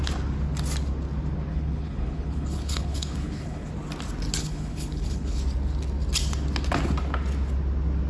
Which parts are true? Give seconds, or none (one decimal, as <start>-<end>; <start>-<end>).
0.0-1.5; 3.7-4.4; 5.4-8.1